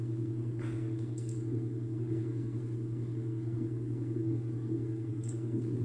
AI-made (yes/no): yes